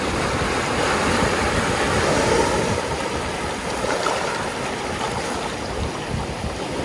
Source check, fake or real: real